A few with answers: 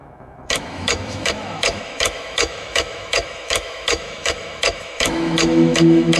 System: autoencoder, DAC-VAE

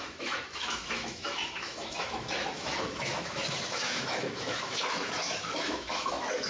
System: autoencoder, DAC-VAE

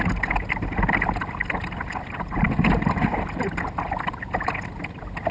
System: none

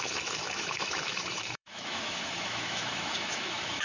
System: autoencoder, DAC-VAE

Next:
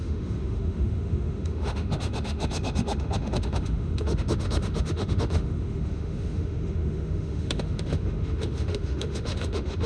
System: autoencoder, DAC-VAE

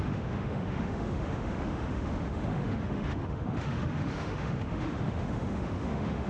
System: autoencoder, DAC-VAE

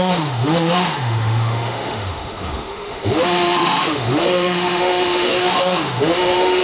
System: autoencoder, DAC-VAE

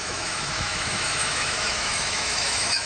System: autoencoder, DAC-VAE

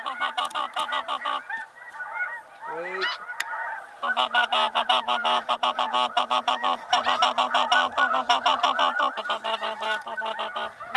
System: none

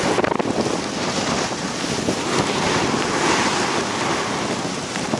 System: none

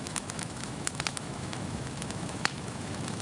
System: autoencoder, DAC-VAE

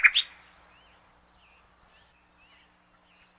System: none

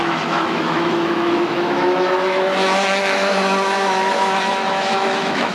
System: autoencoder, DAC-VAE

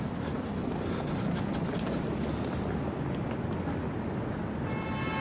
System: none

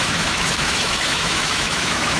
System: autoencoder, DAC-VAE